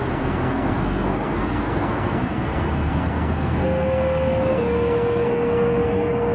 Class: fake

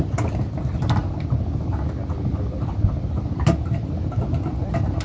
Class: real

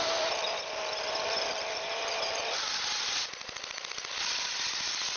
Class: real